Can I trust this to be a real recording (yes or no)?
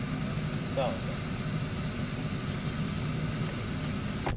yes